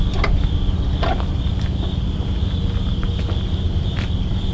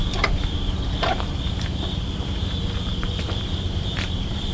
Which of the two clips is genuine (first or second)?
first